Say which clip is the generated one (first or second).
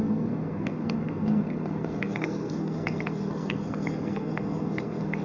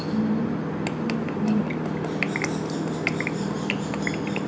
first